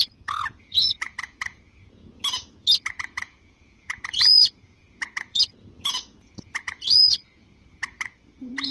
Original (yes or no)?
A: no